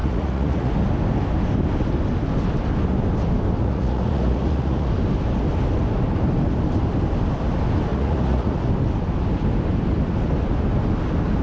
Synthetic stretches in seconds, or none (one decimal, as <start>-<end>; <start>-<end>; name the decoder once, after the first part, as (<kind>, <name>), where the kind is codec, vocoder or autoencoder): 0.0-0.7 (vocoder, Vocos); 3.6-4.9; 7.9-8.7

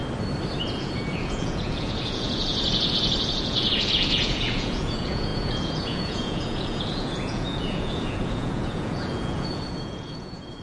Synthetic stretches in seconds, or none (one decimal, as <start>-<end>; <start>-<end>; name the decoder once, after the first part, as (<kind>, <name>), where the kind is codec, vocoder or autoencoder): 0.6-10.6 (vocoder, Vocos)

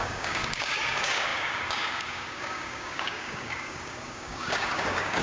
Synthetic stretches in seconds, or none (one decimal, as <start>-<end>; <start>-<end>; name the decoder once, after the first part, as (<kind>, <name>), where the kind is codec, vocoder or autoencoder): 0.0-5.2 (codec, DAC)